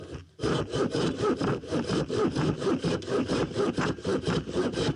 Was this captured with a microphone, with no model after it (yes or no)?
no